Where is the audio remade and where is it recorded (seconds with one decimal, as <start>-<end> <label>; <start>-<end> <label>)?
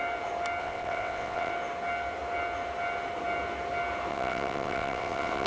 0.0-0.6 recorded; 0.6-1.5 remade; 1.5-4.1 recorded; 4.1-5.5 remade